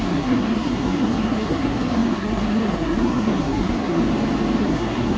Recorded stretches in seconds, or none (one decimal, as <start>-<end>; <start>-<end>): 4.0-4.6